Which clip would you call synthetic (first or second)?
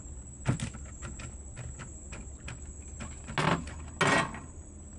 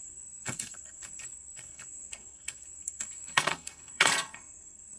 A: second